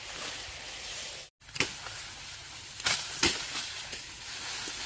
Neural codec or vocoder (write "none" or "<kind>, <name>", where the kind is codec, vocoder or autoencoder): none